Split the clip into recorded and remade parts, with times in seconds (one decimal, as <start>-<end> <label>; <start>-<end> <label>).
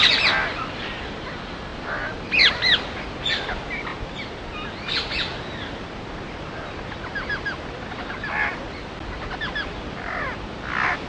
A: 0.0-11.1 recorded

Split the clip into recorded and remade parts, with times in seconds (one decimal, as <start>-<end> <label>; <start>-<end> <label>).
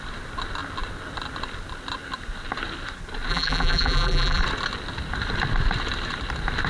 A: 0.0-3.3 recorded; 3.3-4.4 remade; 4.4-6.7 recorded